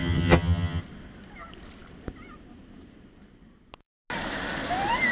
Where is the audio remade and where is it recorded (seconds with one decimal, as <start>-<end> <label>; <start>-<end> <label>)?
0.0-0.8 remade; 0.8-5.1 recorded